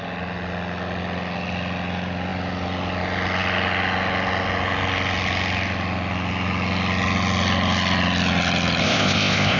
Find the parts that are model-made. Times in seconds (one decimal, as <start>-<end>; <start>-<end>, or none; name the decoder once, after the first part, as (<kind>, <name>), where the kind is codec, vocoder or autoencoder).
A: 8.8-9.6 (codec, ZipCodec)